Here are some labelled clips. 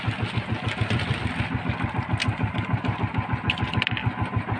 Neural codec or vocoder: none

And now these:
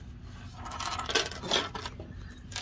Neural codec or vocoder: none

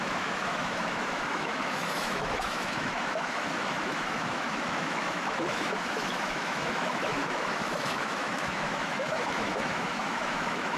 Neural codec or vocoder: autoencoder, DAC-VAE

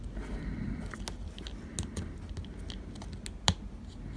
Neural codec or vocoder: none